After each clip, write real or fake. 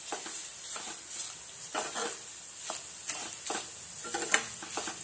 real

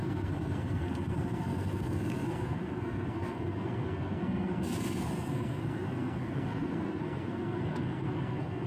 fake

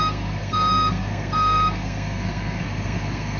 fake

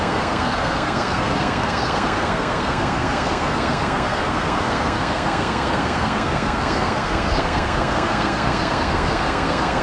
fake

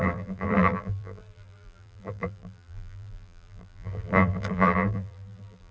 fake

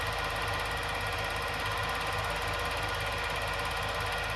real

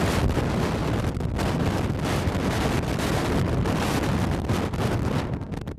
real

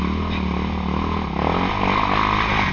real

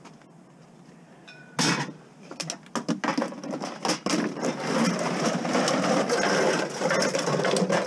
real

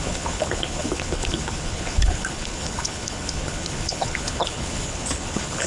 fake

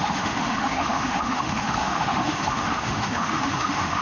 fake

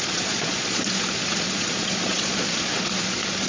fake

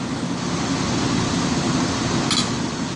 real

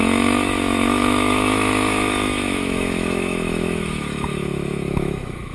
fake